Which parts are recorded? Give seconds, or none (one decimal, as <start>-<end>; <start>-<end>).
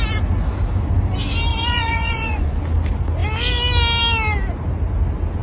0.0-1.5; 2.6-5.4